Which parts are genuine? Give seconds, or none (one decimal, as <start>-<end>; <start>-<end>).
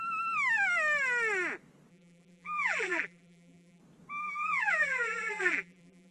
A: 0.0-1.9; 3.8-4.2